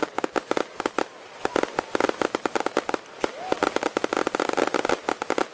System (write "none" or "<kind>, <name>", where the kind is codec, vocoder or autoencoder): none